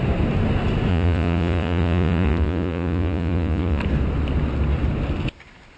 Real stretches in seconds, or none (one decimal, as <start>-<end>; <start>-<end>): 0.0-0.9; 3.8-5.8

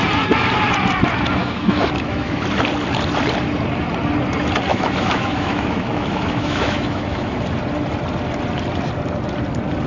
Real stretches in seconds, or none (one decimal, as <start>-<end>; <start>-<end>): 0.0-1.4; 2.4-4.7; 7.4-9.9

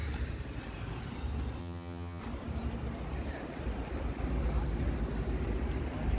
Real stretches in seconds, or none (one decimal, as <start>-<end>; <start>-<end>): 0.0-1.6; 2.2-6.2

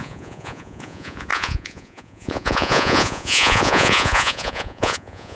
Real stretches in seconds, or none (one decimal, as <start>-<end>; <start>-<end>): none

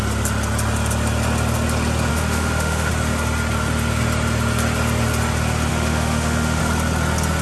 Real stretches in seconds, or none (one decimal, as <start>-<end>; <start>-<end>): 0.0-2.1; 2.9-5.7; 6.6-7.4